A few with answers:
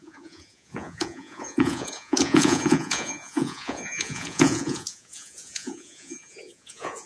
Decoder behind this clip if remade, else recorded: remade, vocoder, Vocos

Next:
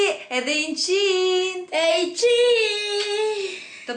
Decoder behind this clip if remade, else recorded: recorded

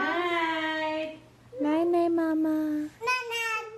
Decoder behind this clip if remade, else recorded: recorded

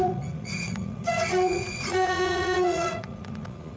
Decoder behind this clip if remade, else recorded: remade, vocoder, Vocos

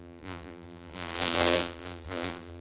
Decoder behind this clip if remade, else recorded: remade, vocoder, BigVGAN v2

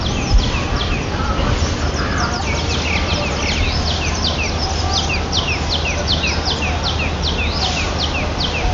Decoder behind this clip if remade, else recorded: recorded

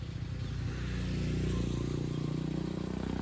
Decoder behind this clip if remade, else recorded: recorded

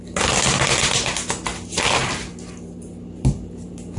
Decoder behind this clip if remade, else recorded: recorded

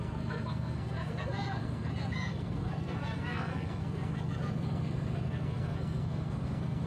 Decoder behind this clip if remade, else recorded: remade, codec, SNAC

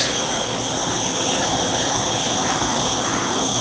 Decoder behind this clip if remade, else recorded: remade, codec, HILCodec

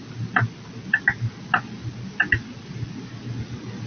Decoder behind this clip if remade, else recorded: recorded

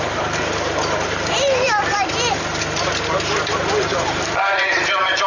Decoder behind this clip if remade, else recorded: remade, vocoder, BigVGAN v2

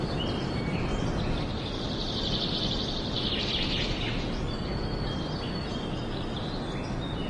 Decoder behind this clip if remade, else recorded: recorded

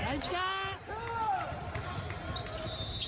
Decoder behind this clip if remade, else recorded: recorded